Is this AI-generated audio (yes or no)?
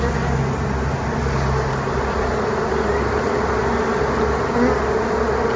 no